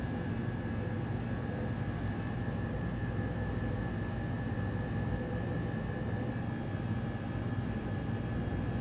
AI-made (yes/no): no